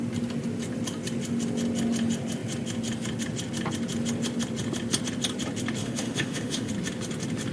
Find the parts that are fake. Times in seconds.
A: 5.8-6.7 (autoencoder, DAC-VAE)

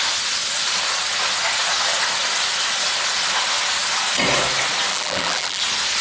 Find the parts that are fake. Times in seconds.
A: 4.9-5.6 (vocoder, BigVGAN v2)

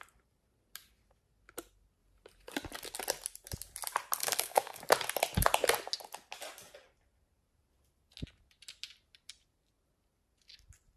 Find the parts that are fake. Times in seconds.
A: 4.2-4.8 (codec, SNAC)

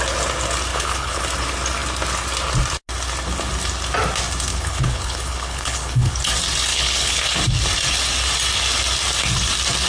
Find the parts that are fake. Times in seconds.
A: 0.7-1.2 (codec, HILCodec); 4.5-6.1; 6.7-7.2

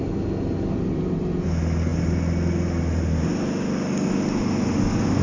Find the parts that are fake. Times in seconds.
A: none

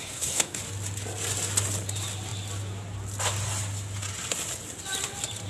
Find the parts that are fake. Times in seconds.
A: 0.0-0.6 (codec, SNAC)

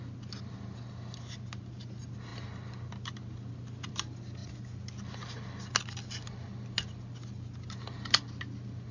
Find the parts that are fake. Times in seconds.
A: none

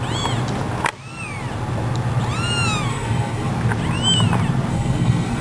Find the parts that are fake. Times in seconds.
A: 2.9-3.5 (codec, SNAC); 4.7-5.4